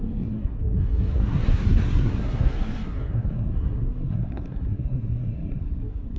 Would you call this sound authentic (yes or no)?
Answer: no